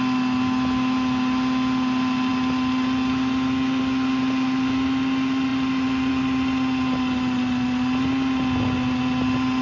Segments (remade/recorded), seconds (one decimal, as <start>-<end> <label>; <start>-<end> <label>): 0.0-9.6 recorded